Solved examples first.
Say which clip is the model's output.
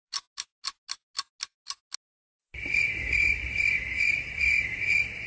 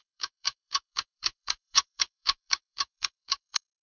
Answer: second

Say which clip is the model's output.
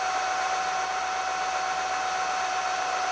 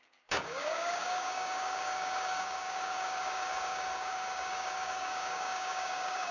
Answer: second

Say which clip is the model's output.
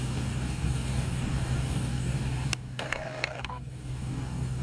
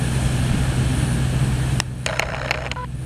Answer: first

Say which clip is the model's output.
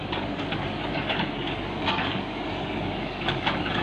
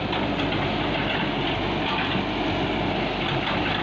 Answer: first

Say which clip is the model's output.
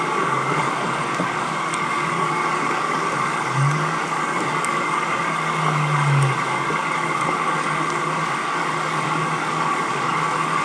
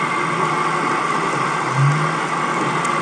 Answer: first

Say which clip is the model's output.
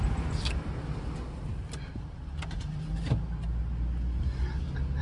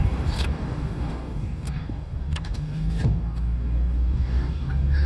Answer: second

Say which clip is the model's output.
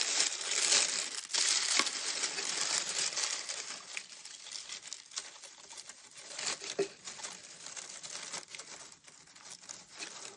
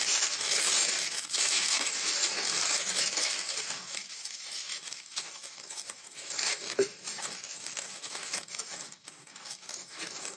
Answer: second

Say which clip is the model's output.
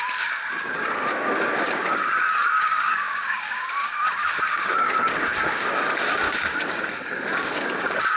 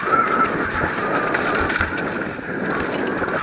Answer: first